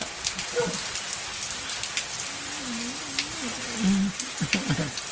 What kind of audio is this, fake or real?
real